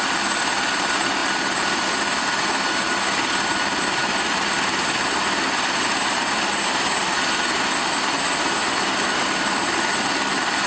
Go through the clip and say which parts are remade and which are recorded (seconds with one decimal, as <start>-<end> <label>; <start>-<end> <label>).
0.0-1.2 recorded; 1.2-2.0 remade; 2.0-10.7 recorded